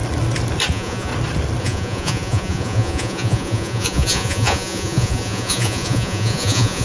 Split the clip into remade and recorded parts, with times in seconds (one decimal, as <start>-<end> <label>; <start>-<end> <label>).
0.0-0.7 recorded; 0.7-1.1 remade; 1.1-1.6 recorded; 1.6-6.8 remade